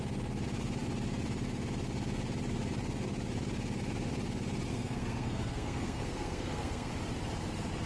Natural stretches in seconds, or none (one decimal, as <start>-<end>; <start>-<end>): 0.0-4.7; 6.9-7.9